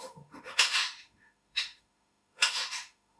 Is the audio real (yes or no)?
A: no